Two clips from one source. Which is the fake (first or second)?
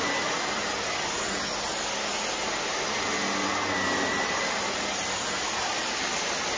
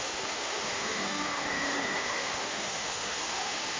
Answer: second